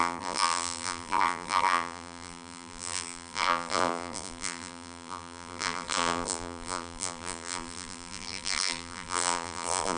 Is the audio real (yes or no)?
no